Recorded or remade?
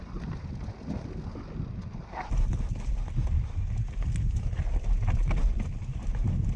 recorded